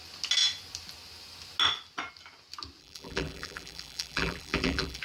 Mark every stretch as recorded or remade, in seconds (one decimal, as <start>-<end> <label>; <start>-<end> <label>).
0.0-2.8 recorded; 2.8-5.0 remade